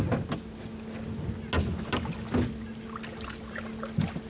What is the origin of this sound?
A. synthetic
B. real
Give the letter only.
B